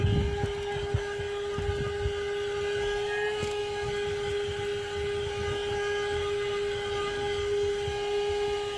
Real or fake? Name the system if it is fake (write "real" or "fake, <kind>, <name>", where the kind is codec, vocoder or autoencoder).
real